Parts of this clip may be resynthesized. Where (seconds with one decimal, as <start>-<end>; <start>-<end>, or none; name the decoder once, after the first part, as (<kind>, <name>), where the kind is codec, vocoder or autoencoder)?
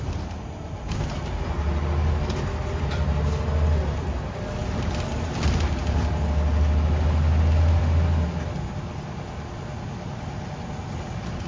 none